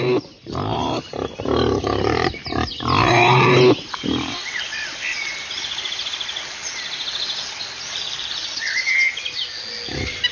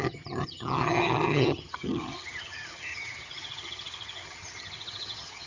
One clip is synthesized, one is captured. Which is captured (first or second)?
first